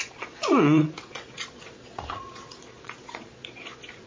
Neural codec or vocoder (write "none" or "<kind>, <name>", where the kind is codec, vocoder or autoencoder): vocoder, Vocos